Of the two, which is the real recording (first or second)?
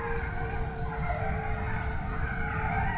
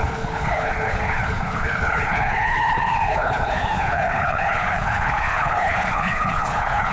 first